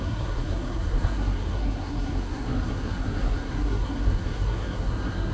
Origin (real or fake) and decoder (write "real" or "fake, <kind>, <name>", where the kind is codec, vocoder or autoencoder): fake, codec, SNAC